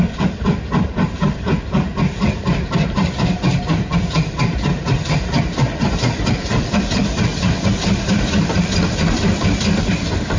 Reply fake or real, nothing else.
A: fake